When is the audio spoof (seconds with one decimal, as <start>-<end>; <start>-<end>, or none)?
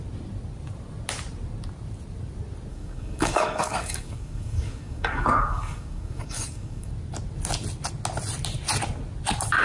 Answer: 2.7-6.9